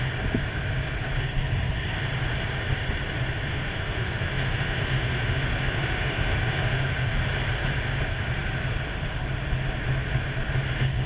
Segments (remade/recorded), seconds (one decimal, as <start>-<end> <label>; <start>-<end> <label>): 0.0-3.5 recorded; 3.5-7.2 remade; 7.2-11.1 recorded